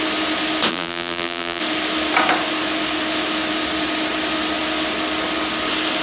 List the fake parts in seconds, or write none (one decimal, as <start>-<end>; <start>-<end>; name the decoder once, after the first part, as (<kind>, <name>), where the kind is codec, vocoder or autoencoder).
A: 0.7-1.6 (vocoder, BigVGAN v2)